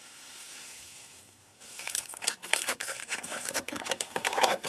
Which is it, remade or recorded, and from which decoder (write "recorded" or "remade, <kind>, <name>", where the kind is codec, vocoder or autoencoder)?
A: remade, codec, SNAC